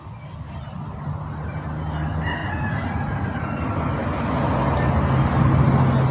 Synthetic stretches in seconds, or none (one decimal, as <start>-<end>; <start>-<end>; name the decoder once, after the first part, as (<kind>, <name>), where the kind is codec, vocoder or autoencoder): 2.4-3.6 (vocoder, Vocos)